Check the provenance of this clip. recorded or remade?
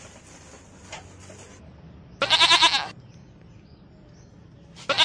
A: recorded